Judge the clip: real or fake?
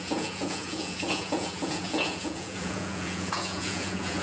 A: fake